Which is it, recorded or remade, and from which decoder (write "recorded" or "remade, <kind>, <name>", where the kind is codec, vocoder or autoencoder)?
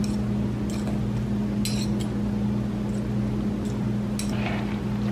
recorded